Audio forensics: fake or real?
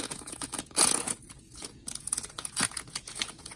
fake